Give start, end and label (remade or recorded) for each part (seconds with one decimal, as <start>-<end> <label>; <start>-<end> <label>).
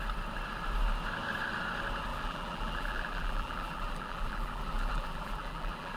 0.0-2.1 recorded; 2.1-6.0 remade